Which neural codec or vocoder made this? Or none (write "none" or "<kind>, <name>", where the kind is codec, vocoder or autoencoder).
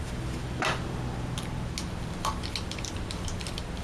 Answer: none